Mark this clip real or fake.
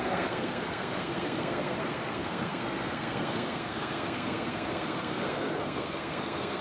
fake